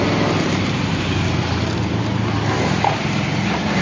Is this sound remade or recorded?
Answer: recorded